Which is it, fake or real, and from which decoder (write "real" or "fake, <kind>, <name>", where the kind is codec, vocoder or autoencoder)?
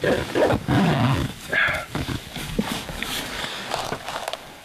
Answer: fake, codec, DAC